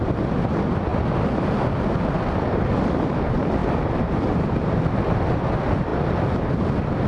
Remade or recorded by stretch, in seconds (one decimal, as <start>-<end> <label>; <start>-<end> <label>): 0.0-3.6 recorded; 3.6-5.3 remade; 5.3-5.9 recorded; 5.9-6.4 remade; 6.4-7.1 recorded

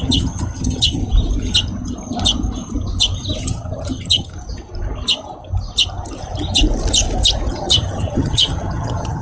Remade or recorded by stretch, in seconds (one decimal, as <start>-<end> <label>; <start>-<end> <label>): 0.0-1.0 remade; 1.0-3.4 recorded; 3.4-4.3 remade; 4.3-7.5 recorded; 7.5-9.2 remade